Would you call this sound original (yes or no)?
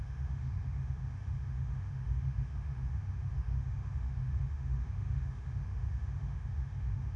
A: no